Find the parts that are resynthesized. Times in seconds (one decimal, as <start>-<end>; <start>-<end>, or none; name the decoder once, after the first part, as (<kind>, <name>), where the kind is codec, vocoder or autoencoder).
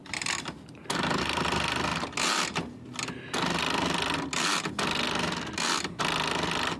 none